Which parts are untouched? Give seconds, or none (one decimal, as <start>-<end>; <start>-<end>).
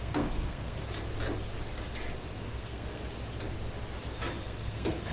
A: 0.8-2.4; 3.0-4.4